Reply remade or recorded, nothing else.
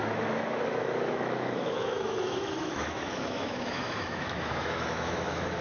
remade